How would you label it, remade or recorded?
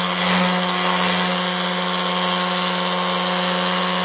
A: recorded